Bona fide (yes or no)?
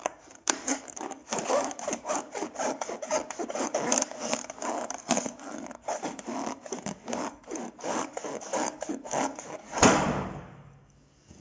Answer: no